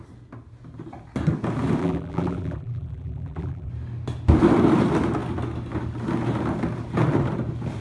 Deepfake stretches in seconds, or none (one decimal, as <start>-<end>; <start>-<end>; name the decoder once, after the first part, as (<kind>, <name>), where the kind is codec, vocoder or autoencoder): 1.8-3.7 (vocoder, BigVGAN v2)